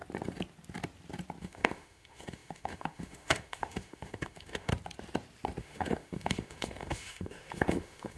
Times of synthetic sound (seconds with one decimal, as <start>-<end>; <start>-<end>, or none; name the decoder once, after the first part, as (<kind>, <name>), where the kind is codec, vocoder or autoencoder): 1.4-4.7 (autoencoder, DAC-VAE); 5.6-8.2